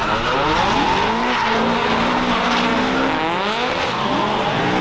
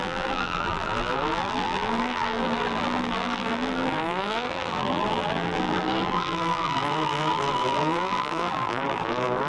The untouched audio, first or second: first